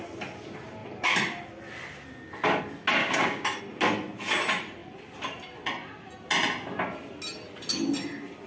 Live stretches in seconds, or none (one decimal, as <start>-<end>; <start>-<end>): 0.0-3.0; 3.6-8.5